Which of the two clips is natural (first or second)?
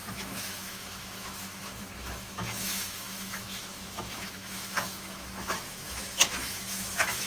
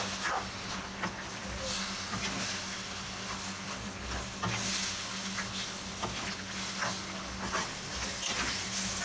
second